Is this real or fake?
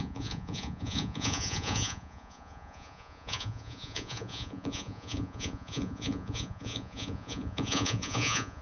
fake